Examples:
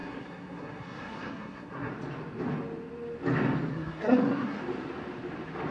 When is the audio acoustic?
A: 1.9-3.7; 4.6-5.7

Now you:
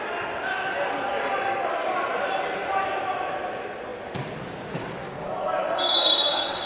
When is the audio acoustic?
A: 0.0-1.1; 1.7-5.6

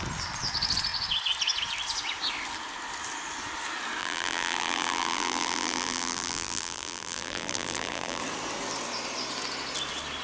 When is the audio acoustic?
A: 0.0-4.0; 8.2-10.2

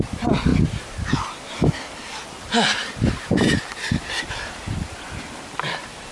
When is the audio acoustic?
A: 0.0-6.1

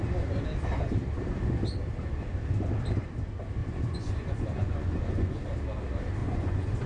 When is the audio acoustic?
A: 0.0-3.6; 5.4-6.2

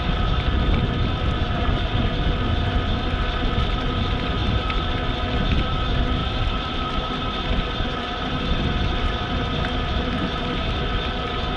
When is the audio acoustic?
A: 0.0-6.2; 8.7-11.6

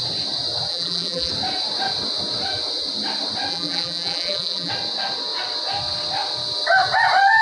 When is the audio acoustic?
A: 0.0-0.7; 1.3-3.5; 4.7-7.4

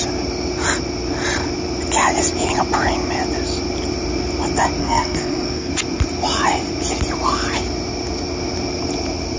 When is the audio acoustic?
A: 0.0-4.8; 5.7-9.4